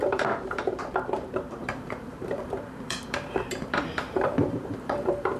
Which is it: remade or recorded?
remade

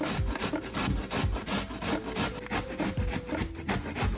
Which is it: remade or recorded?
recorded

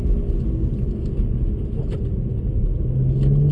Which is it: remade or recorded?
recorded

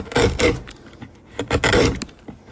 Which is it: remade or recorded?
recorded